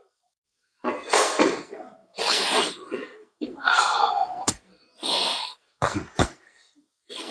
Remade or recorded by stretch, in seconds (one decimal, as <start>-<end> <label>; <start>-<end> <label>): 0.0-7.3 remade